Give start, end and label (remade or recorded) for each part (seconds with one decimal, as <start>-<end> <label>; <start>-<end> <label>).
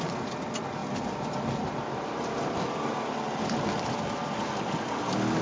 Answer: 0.0-5.4 recorded